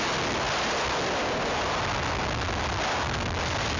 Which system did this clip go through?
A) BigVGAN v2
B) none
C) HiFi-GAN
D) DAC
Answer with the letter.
B